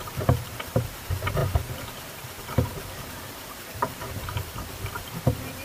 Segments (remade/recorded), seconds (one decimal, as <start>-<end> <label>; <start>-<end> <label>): 0.0-5.6 remade